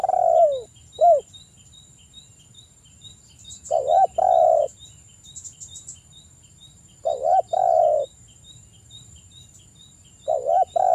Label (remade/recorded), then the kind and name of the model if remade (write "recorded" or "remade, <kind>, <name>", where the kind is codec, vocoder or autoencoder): recorded